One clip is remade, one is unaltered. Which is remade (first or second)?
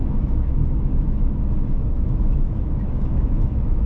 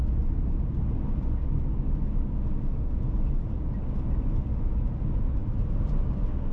first